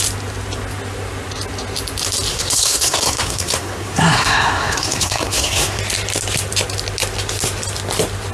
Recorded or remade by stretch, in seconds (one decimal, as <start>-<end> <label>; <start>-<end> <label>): 0.0-2.3 recorded; 2.3-5.8 remade; 5.8-8.3 recorded